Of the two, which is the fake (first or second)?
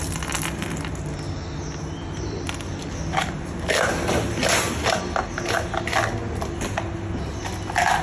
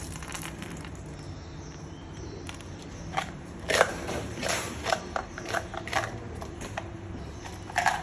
second